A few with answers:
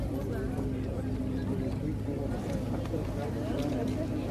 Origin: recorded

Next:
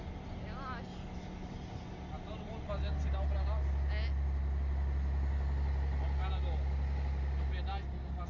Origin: recorded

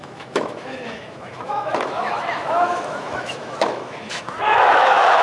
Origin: remade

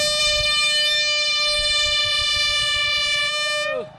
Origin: recorded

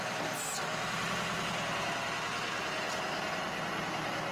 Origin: recorded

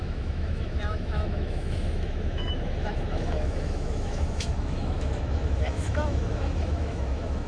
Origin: remade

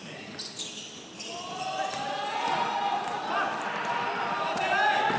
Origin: recorded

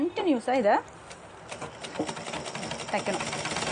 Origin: recorded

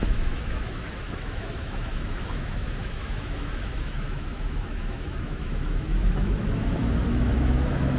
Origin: remade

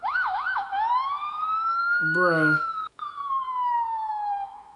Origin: remade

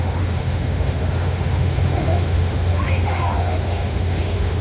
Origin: remade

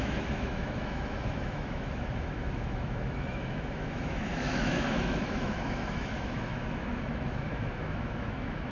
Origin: remade